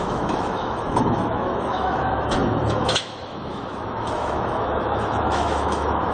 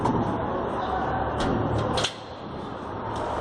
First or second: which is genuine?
second